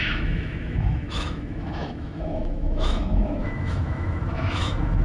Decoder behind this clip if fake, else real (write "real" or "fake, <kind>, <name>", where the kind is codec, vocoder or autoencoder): fake, autoencoder, DAC-VAE